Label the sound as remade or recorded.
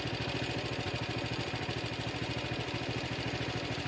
recorded